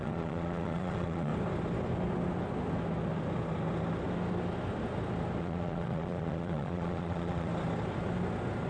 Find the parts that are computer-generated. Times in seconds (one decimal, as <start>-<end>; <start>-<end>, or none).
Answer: 0.0-1.3; 5.4-7.5